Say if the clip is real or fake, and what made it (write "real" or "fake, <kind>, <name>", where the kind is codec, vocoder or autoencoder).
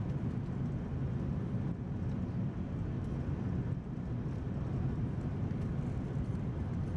real